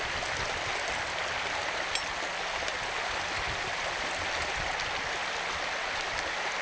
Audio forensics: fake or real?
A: real